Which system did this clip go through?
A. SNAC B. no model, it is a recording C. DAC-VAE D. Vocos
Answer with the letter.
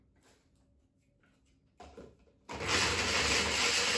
B